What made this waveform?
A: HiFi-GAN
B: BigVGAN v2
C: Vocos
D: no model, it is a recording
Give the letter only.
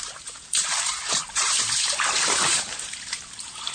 B